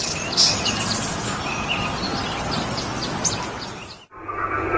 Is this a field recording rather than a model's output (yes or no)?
yes